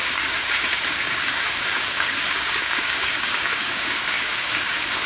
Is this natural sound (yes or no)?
no